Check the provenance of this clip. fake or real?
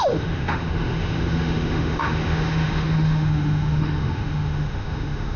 fake